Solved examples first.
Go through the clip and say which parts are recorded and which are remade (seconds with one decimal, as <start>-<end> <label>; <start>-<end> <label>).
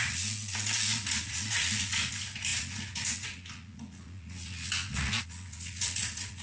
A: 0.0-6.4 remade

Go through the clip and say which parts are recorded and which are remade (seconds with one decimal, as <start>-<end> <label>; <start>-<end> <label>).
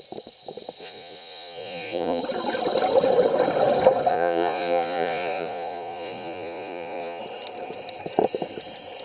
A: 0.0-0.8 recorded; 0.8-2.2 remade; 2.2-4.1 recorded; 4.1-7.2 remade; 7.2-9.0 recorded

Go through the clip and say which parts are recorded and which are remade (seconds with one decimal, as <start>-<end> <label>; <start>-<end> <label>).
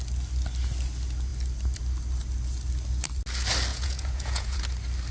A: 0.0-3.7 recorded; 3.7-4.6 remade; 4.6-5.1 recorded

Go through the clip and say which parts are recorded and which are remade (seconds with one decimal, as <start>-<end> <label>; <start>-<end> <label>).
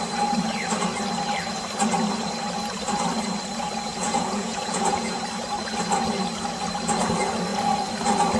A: 0.0-3.9 recorded; 3.9-5.2 remade; 5.2-8.4 recorded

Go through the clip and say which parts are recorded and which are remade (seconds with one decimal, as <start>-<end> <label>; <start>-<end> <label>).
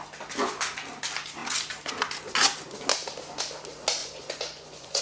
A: 0.0-4.0 recorded; 4.0-5.0 remade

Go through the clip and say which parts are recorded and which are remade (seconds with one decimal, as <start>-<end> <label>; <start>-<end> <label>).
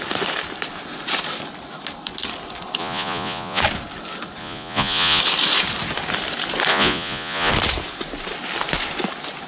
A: 0.0-2.8 recorded; 2.8-3.6 remade; 3.6-4.4 recorded; 4.4-5.2 remade; 5.2-6.7 recorded; 6.7-7.5 remade; 7.5-9.5 recorded